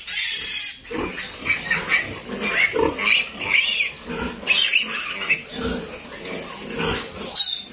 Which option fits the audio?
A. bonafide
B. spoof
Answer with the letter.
A